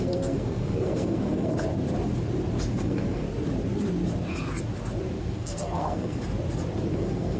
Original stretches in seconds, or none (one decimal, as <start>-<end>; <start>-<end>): 1.5-2.7; 3.2-5.2; 6.2-6.9